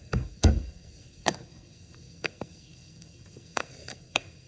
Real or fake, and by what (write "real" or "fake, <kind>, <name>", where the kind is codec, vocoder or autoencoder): fake, codec, SNAC